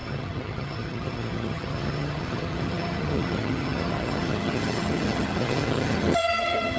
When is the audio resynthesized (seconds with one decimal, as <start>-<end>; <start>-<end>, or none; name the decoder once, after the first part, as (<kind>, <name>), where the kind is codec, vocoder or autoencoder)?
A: 0.0-6.8 (vocoder, HiFi-GAN)

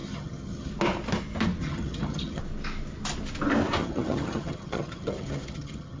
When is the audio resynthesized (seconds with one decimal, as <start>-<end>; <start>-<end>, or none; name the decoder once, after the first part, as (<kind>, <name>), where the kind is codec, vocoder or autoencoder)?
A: 0.0-0.7 (vocoder, HiFi-GAN); 1.6-2.4; 3.8-6.0

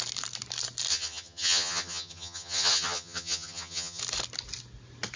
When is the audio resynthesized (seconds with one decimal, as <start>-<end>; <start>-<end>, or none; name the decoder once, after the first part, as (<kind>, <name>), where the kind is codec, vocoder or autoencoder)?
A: 0.9-4.0 (vocoder, HiFi-GAN)

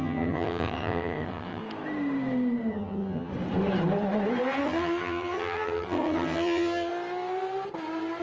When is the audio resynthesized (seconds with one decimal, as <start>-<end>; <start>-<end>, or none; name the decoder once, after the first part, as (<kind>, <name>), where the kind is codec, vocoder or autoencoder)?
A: 0.0-1.6 (vocoder, HiFi-GAN); 2.7-3.3; 4.6-6.9

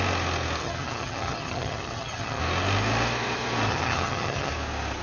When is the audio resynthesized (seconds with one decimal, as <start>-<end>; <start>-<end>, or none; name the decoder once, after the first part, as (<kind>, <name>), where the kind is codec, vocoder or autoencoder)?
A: 0.6-2.4 (vocoder, HiFi-GAN); 3.7-4.5